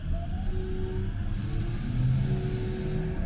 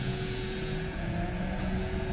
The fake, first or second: second